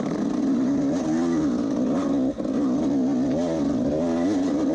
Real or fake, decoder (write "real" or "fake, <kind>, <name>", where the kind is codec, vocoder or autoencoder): real